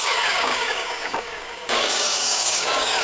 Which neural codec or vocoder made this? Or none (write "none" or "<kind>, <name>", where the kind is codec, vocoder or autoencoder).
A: codec, DAC